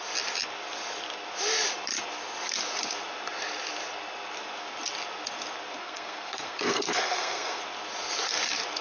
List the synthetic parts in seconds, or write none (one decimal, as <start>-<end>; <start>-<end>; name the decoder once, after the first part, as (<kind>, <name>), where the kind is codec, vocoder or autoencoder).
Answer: 5.8-7.6 (codec, SNAC)